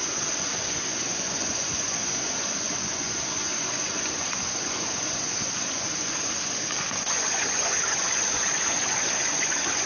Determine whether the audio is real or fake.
fake